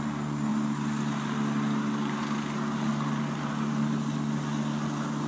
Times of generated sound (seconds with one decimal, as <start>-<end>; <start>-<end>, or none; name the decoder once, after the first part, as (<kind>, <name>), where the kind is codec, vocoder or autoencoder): none